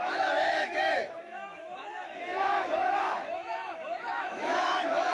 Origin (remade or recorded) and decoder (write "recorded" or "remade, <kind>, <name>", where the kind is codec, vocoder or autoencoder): remade, autoencoder, DAC-VAE